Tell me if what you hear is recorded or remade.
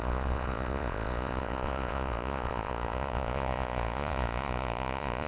remade